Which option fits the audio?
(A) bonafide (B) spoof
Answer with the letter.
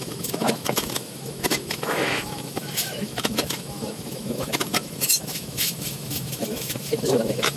B